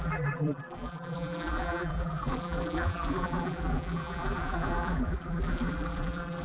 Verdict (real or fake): fake